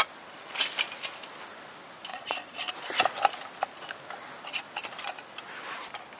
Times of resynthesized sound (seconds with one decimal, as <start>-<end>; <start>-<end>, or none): 2.1-2.7